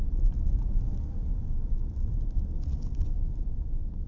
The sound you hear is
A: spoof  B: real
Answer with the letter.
B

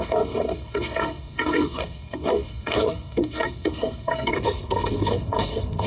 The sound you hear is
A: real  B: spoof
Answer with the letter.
B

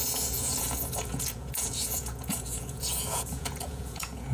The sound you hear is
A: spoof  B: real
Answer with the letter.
A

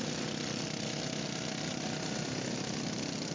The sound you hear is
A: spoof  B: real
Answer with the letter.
B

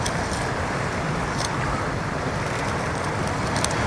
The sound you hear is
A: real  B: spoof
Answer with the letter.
A